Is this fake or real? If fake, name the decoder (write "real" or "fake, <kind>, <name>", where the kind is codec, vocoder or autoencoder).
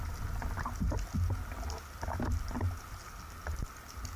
real